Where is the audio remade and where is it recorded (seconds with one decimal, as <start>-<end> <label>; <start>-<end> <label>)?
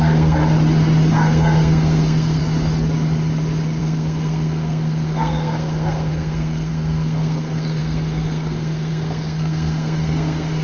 0.0-0.4 remade; 0.4-1.1 recorded; 1.1-2.4 remade; 2.4-3.8 recorded; 3.8-10.6 remade